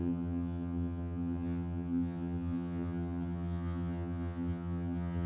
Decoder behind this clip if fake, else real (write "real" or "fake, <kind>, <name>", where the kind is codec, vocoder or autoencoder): fake, vocoder, HiFi-GAN